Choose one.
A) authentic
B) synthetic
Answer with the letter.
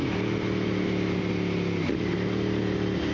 A